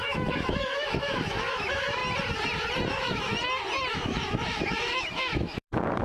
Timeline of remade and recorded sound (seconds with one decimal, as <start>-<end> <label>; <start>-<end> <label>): 0.0-2.0 remade; 2.0-2.9 recorded; 2.9-3.3 remade; 3.3-3.9 recorded; 3.9-6.0 remade